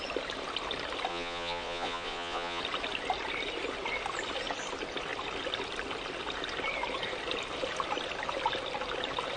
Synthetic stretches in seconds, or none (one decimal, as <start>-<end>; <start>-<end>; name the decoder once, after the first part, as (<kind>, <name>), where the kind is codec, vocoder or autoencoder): 1.1-2.6 (vocoder, Vocos)